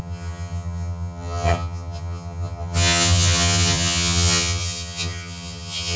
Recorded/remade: remade